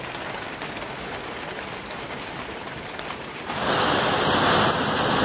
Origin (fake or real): real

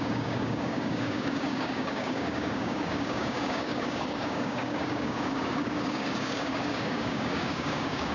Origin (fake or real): fake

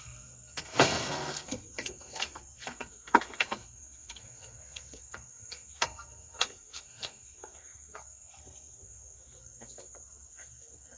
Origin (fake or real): fake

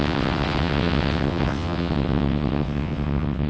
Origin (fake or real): fake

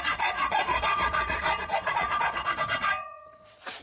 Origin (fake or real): fake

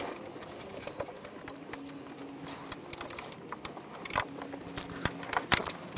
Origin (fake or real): real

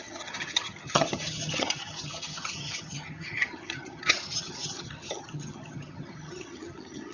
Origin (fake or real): fake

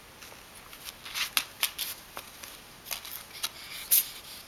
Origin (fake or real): real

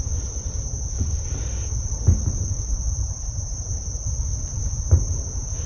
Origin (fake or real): real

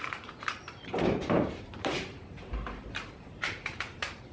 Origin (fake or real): fake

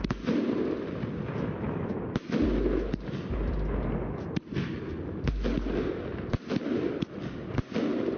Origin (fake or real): real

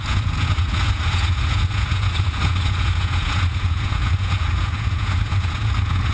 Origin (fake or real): fake